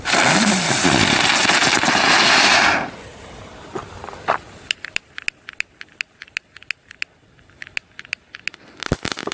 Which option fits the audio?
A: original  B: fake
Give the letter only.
A